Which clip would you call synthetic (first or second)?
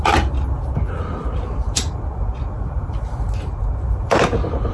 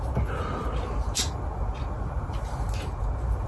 first